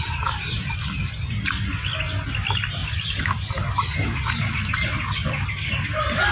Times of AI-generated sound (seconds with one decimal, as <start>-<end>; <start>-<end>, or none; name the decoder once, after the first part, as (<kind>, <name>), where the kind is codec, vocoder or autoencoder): 2.8-3.5 (vocoder, BigVGAN v2)